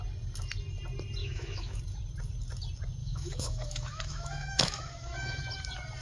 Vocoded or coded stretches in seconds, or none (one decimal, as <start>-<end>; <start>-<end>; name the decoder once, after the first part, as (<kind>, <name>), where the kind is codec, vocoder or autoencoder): 1.2-1.8 (autoencoder, DAC-VAE); 3.0-5.4

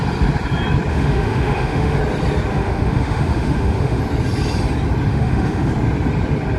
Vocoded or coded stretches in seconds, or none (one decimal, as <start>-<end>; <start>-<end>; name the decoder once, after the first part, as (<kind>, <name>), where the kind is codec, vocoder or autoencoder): 0.9-2.0 (autoencoder, DAC-VAE); 2.5-4.0; 5.1-5.7

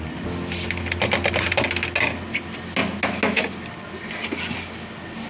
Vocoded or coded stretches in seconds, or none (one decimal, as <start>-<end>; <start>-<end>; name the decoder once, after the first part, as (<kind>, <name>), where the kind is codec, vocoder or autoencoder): none

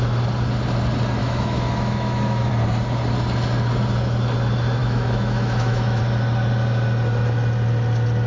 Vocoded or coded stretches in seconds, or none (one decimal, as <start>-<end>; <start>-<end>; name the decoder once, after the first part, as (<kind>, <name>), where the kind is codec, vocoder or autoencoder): 1.2-2.5 (autoencoder, DAC-VAE); 4.8-6.0

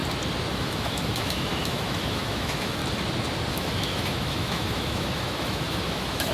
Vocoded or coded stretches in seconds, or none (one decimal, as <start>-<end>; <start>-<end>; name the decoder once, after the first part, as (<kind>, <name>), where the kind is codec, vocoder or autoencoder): 0.5-2.8 (autoencoder, DAC-VAE); 3.5-6.3

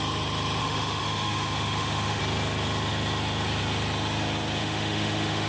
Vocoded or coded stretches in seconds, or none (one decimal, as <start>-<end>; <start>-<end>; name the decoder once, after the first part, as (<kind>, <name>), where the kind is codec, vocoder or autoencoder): 0.6-2.2 (autoencoder, DAC-VAE); 4.6-5.5

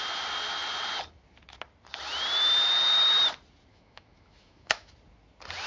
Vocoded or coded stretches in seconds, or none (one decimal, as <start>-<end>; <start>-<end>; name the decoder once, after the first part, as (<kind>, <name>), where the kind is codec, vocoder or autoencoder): 3.7-4.9 (autoencoder, DAC-VAE)